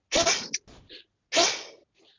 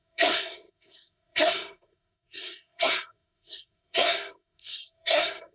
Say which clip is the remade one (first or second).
second